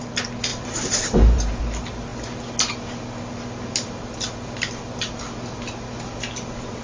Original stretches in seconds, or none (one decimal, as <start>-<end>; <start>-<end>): 0.0-0.5; 1.6-6.8